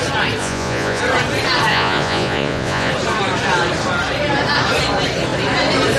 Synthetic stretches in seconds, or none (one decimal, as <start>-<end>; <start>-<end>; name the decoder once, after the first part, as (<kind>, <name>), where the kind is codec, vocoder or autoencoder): 0.4-1.0 (vocoder, Vocos); 1.7-2.9